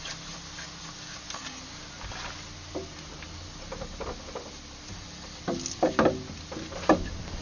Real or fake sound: real